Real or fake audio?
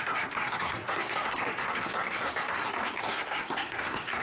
fake